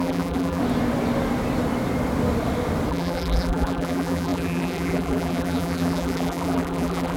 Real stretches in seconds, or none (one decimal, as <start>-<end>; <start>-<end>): 0.6-2.9